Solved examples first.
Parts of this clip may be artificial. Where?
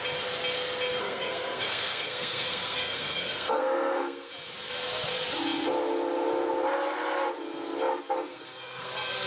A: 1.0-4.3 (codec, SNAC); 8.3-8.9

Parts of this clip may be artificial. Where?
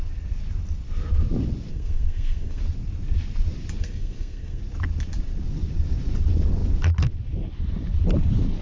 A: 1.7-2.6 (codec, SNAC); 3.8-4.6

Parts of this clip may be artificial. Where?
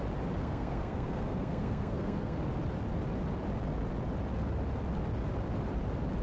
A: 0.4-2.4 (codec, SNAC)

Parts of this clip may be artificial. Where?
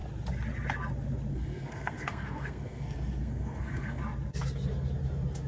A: 1.3-4.0 (codec, SNAC)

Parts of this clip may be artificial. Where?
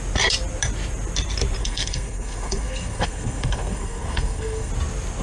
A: 1.6-4.7 (codec, SNAC)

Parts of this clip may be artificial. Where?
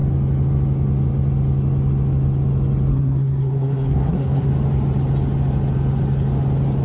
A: 2.9-4.5 (codec, SNAC)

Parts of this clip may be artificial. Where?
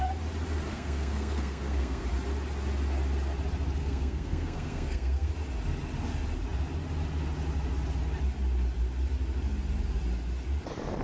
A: 0.7-2.0 (codec, SNAC); 3.8-5.3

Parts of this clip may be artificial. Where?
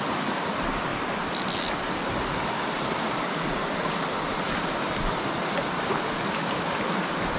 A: none